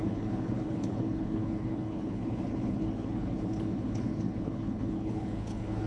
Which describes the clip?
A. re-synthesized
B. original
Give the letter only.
A